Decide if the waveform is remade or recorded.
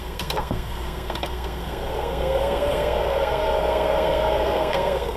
remade